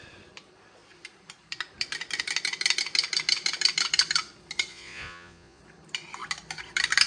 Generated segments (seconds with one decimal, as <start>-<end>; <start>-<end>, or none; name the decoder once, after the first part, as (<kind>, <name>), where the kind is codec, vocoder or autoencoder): 4.7-5.6 (vocoder, Vocos)